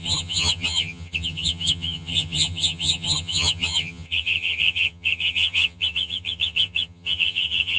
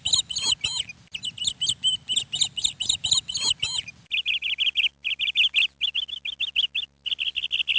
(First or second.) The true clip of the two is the second